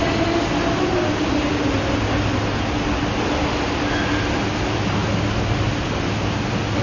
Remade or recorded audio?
recorded